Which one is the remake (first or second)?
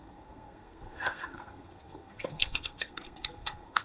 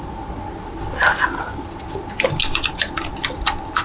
first